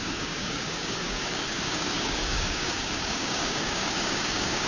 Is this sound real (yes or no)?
no